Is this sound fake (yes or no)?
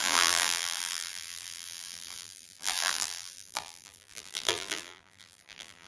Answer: yes